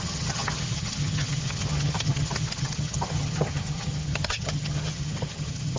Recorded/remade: remade